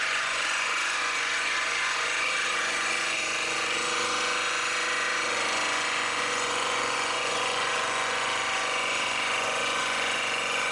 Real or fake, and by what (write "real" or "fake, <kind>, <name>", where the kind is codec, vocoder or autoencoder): fake, vocoder, Vocos